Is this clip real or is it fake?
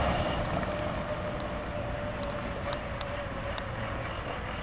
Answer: real